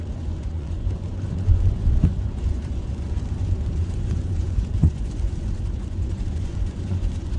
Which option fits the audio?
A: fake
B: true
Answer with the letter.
A